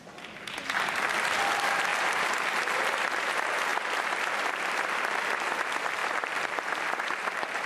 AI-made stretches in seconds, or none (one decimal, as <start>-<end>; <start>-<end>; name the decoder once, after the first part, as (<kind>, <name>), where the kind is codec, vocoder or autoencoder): 1.9-3.1 (vocoder, BigVGAN v2); 6.0-7.7

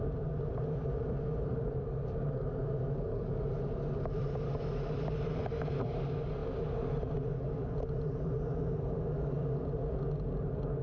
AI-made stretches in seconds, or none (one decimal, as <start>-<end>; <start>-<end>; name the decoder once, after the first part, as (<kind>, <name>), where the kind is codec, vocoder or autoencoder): none